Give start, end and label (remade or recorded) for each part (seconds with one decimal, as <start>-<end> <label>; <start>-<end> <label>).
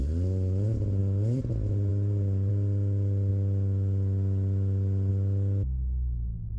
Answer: 0.0-1.0 recorded; 1.0-1.5 remade; 1.5-6.6 recorded